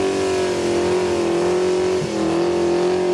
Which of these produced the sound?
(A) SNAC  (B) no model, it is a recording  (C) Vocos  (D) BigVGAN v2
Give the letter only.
B